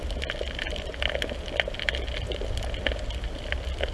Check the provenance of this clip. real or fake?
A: real